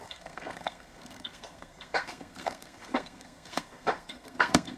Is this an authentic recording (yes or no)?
no